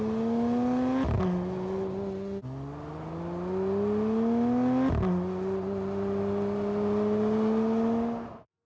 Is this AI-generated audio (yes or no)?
no